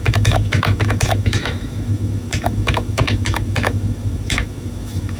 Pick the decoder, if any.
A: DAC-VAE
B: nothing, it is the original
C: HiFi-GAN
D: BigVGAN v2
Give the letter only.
A